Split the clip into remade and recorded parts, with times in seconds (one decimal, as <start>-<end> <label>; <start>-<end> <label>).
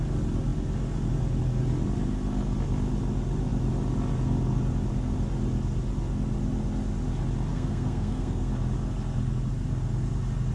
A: 0.0-7.5 recorded; 7.5-8.5 remade; 8.5-10.5 recorded